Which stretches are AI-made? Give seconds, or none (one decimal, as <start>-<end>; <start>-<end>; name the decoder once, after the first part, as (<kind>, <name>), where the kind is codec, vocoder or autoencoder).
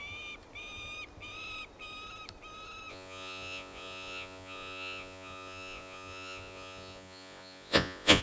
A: 2.9-8.2 (vocoder, Vocos)